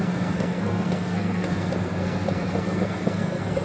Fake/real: fake